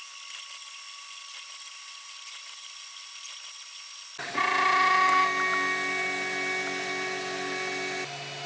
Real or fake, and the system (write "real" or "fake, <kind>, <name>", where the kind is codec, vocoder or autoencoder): real